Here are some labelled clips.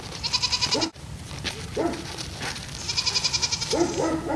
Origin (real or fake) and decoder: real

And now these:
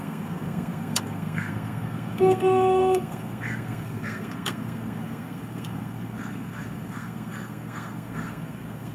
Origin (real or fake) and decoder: fake, codec, SNAC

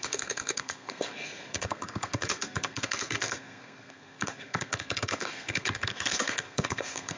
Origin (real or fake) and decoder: fake, codec, SNAC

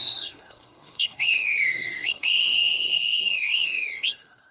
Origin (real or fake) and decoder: fake, codec, SNAC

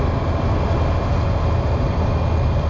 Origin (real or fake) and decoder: real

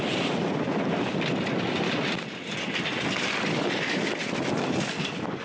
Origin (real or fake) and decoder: real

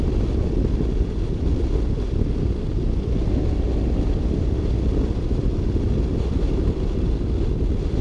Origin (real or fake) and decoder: real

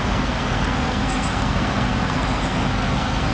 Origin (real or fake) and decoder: fake, codec, SNAC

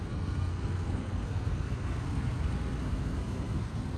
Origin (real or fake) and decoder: fake, codec, SNAC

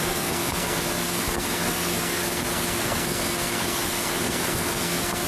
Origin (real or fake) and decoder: fake, codec, SNAC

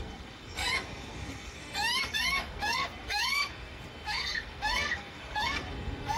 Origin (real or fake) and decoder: fake, codec, SNAC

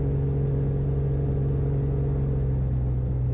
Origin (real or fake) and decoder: real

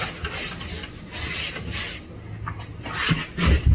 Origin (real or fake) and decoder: real